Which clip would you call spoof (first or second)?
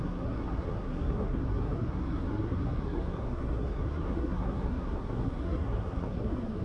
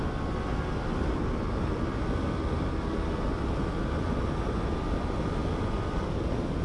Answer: first